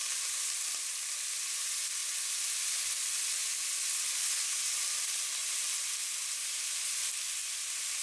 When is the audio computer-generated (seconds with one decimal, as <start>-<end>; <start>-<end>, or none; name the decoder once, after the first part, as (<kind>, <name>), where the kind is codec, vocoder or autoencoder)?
0.0-1.2 (vocoder, BigVGAN v2)